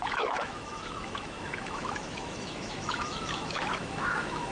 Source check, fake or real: fake